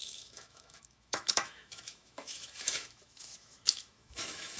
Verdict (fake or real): fake